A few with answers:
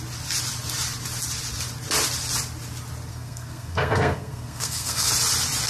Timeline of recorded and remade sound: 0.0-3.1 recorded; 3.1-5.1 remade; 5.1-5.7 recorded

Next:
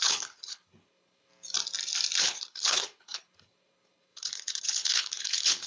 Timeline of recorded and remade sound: 0.0-1.3 remade; 1.3-2.2 recorded; 2.2-5.7 remade

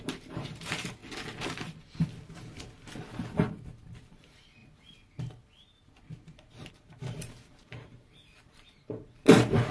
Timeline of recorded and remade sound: 0.0-1.0 remade; 1.0-4.1 recorded; 4.1-4.6 remade; 4.6-6.7 recorded; 6.7-9.7 remade

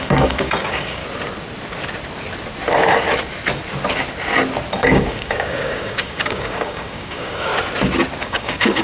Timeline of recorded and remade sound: 0.0-1.0 remade; 1.0-4.8 recorded; 4.8-7.5 remade; 7.5-8.2 recorded; 8.2-8.8 remade

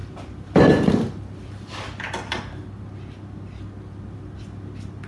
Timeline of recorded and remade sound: 0.0-0.9 remade; 0.9-1.4 recorded; 1.4-2.6 remade; 2.6-5.1 recorded

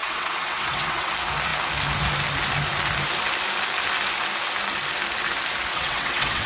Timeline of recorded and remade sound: 0.0-1.1 remade; 1.1-5.7 recorded; 5.7-6.5 remade

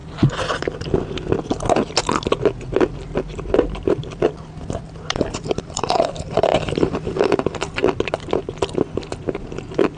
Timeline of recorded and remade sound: 0.0-5.1 recorded; 5.1-7.8 remade; 7.8-10.0 recorded

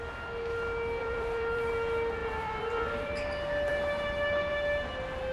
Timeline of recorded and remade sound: 0.0-1.0 recorded; 1.0-1.7 remade; 1.7-2.2 recorded; 2.2-3.1 remade; 3.1-5.3 recorded